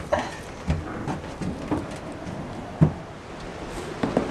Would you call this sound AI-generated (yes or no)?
no